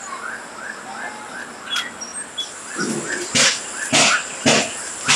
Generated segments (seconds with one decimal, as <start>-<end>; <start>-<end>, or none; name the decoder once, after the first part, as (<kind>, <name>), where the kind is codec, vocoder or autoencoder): none